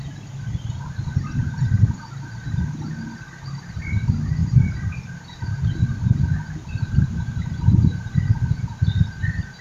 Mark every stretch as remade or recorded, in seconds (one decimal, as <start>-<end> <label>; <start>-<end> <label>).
0.0-4.4 recorded; 4.4-6.3 remade; 6.3-9.6 recorded